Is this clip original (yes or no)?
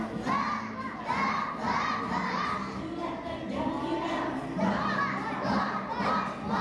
yes